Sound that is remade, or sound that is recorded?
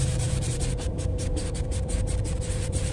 remade